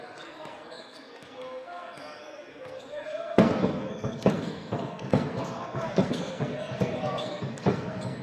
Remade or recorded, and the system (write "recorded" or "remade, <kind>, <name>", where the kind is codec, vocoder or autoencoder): remade, codec, SNAC